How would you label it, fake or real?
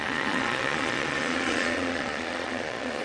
fake